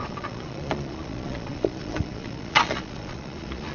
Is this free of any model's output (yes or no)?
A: no